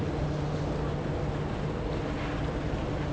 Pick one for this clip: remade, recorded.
recorded